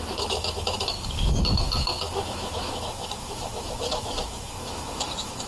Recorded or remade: remade